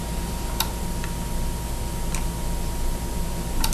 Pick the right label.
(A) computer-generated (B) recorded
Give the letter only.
B